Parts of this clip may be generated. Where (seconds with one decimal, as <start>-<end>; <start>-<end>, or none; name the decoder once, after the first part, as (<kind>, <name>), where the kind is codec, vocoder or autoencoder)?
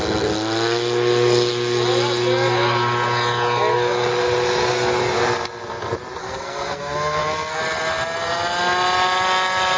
6.2-7.6 (codec, SNAC)